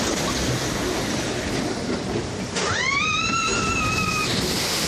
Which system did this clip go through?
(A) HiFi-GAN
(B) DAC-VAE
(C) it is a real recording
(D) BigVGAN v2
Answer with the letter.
C